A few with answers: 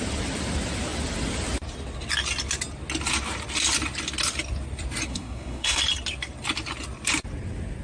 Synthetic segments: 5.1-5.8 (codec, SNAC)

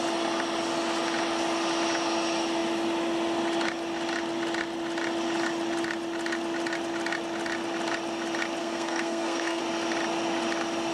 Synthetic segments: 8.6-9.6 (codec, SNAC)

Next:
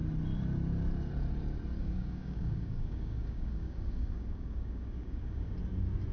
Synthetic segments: 1.8-5.5 (codec, DAC)